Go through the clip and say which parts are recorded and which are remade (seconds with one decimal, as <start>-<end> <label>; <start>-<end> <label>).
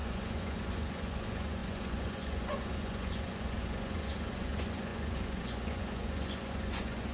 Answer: 0.0-7.1 remade